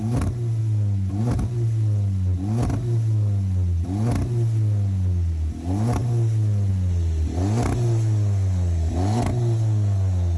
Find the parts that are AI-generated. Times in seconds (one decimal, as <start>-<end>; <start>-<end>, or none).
none